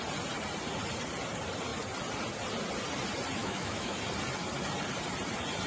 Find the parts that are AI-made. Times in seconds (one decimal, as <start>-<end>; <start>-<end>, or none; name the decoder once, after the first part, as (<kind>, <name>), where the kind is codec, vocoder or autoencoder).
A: 3.4-4.0 (autoencoder, DAC-VAE)